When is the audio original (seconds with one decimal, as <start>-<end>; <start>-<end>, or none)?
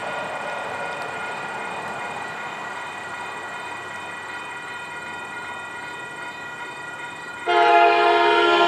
0.0-7.7